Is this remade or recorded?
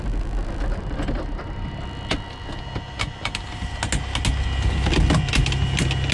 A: recorded